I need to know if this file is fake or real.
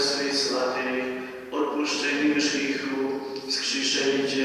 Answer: real